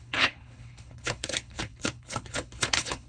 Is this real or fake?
fake